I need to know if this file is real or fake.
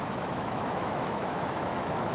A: fake